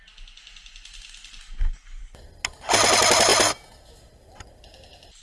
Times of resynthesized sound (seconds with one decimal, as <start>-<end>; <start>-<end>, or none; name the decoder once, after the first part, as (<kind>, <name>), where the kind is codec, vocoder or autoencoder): none